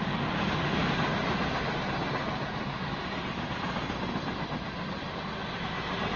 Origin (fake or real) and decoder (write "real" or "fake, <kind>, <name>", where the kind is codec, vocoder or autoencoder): real